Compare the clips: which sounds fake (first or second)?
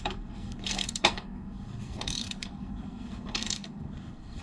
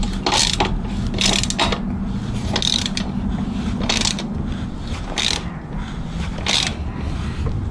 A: first